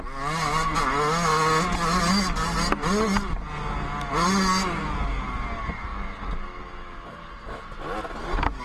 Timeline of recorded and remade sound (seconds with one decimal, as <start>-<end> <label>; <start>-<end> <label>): 0.0-8.6 recorded